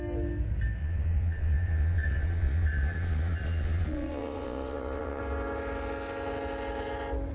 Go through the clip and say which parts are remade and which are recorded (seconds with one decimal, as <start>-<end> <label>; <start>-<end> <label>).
0.0-0.8 recorded; 0.8-5.2 remade; 5.2-7.3 recorded